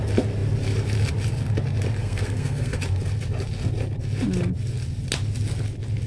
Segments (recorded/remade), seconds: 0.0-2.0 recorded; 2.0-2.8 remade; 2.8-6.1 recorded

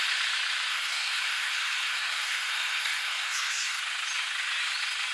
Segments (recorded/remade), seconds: 0.0-0.7 recorded; 0.7-3.8 remade; 3.8-5.1 recorded

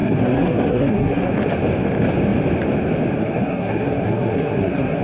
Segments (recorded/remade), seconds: 0.0-1.3 remade; 1.3-3.2 recorded; 3.2-5.0 remade

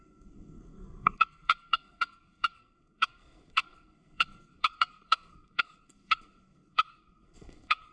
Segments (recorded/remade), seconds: 0.0-7.9 remade

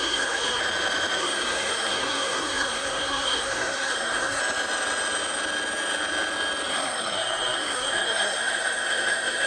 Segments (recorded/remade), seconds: 0.0-0.6 remade; 0.6-1.2 recorded; 1.2-4.4 remade; 4.4-6.7 recorded; 6.7-9.5 remade

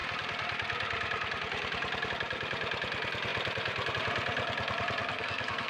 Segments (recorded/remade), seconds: 0.0-5.0 recorded; 5.0-5.7 remade

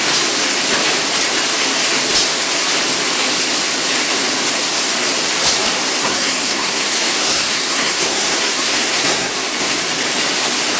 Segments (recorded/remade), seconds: 0.0-6.0 recorded; 6.0-9.3 remade; 9.3-10.8 recorded